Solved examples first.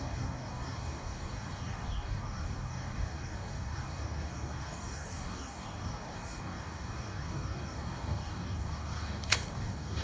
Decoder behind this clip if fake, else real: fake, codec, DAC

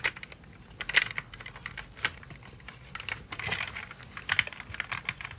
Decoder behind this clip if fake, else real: real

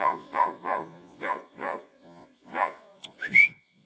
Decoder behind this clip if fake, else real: fake, vocoder, Vocos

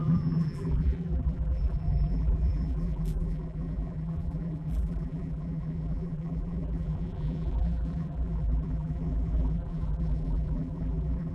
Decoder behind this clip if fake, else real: fake, vocoder, BigVGAN v2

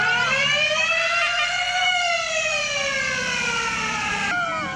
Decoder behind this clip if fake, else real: fake, vocoder, BigVGAN v2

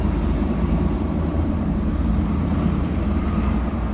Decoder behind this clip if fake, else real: fake, vocoder, BigVGAN v2